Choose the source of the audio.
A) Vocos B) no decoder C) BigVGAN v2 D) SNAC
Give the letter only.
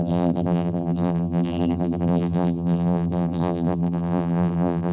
C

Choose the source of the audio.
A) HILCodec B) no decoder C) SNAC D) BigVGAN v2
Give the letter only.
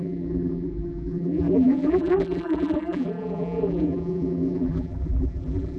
D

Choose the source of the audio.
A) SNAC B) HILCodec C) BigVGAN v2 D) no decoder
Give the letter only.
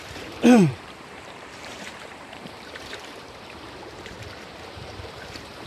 C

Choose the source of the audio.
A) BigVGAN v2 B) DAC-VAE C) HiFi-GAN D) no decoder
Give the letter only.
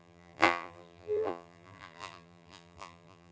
A